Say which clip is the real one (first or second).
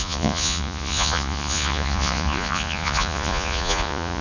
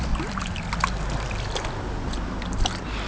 second